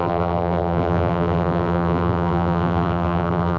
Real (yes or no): no